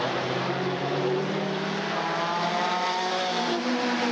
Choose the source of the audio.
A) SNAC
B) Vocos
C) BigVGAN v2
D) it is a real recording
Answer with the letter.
C